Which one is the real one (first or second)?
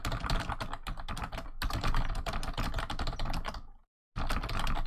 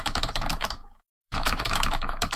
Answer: first